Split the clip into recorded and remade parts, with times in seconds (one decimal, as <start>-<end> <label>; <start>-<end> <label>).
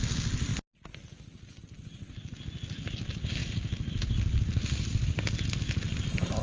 0.0-3.4 recorded; 3.4-5.6 remade; 5.6-6.4 recorded